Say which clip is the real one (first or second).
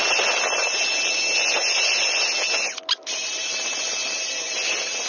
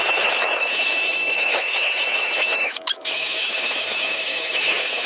first